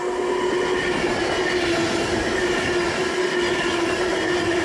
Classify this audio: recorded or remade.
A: recorded